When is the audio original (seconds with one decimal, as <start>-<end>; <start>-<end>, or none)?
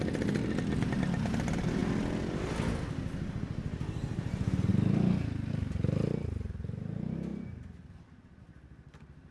0.0-9.3